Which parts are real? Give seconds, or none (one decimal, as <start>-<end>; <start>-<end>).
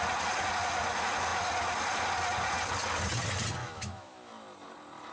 0.0-3.6; 4.3-5.1